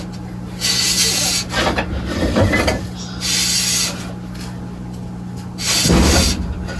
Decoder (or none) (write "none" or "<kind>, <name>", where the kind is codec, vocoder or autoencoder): none